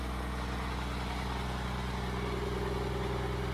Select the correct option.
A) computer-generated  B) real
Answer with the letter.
B